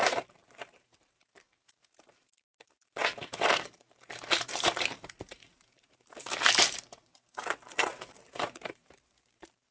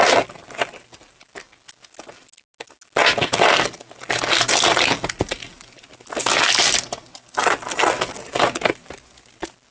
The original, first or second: second